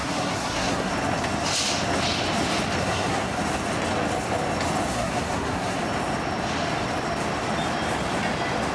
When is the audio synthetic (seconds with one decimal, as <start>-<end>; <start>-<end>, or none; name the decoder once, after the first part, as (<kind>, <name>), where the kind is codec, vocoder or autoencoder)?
0.0-0.9 (codec, SNAC); 2.8-3.4; 4.9-5.8